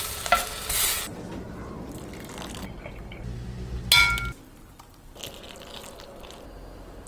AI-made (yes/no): no